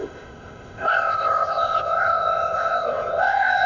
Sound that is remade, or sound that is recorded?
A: remade